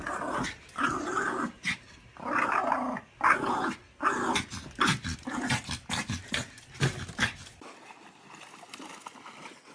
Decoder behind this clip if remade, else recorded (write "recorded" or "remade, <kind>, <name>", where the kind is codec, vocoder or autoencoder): recorded